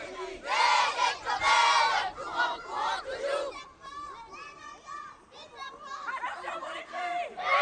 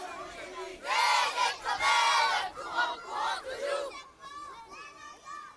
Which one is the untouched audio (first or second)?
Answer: second